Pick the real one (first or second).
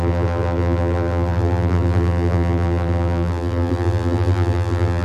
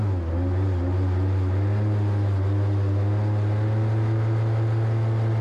second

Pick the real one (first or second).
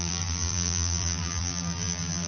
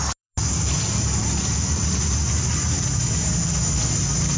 second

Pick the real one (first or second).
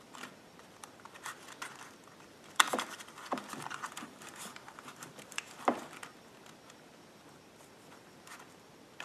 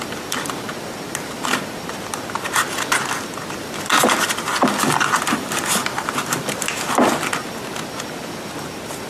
second